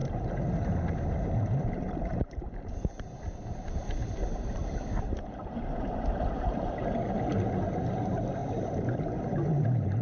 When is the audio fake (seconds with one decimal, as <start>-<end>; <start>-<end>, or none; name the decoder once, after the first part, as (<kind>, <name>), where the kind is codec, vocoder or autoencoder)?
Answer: 0.0-3.2 (vocoder, BigVGAN v2); 4.0-7.1; 8.4-9.0